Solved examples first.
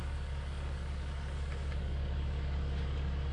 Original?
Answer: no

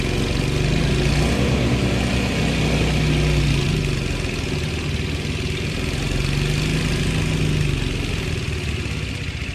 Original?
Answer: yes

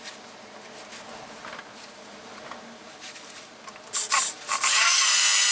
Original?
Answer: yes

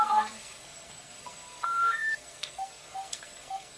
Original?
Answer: no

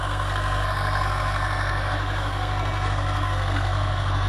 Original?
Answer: no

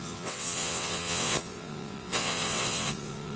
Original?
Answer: no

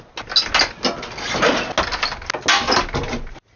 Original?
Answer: yes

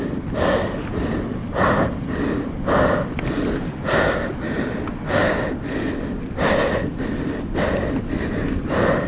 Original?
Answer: yes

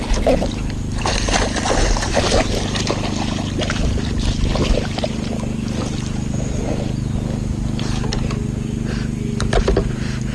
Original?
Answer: yes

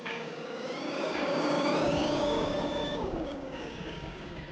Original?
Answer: no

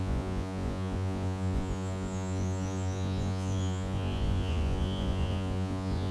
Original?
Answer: no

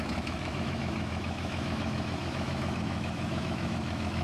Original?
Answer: no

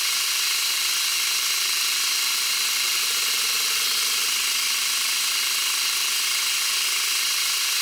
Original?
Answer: yes